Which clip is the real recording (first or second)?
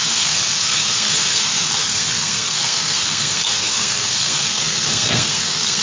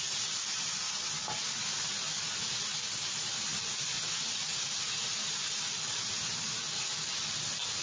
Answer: second